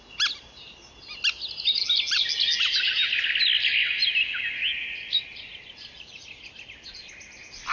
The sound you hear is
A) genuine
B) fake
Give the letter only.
A